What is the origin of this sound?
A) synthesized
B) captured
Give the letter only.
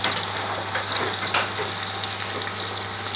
B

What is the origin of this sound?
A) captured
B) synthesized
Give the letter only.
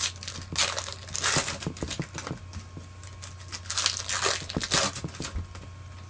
A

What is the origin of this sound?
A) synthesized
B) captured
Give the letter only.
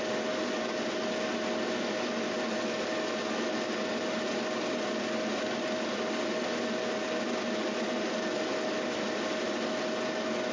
B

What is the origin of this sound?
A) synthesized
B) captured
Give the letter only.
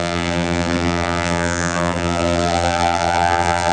A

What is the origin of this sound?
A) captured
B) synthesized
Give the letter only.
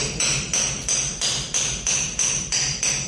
B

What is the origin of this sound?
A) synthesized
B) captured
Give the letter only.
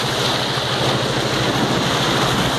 B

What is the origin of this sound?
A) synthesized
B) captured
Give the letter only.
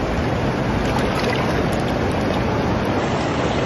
B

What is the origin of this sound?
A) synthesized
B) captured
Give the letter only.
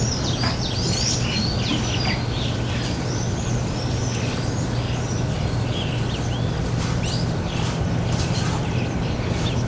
B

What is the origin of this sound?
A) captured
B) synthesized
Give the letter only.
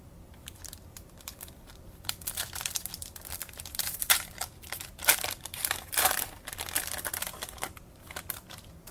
B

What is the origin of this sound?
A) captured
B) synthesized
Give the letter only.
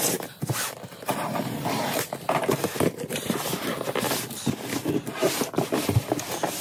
A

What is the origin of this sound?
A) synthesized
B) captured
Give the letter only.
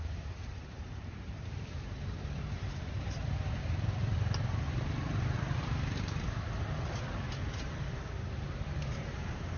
A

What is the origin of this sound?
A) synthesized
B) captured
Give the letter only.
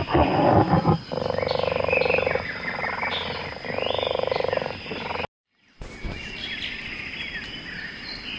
B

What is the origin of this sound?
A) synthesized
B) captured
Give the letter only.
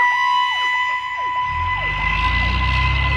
B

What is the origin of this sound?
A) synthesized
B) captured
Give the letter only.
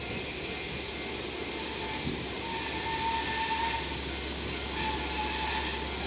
B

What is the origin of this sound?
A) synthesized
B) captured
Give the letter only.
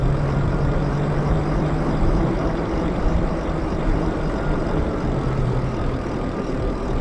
A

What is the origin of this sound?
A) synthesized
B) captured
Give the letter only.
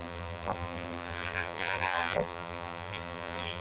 A